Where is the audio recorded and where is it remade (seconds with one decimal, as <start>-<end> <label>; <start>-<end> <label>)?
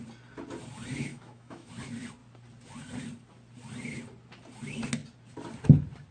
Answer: 0.0-1.1 recorded; 1.1-1.7 remade; 1.7-6.1 recorded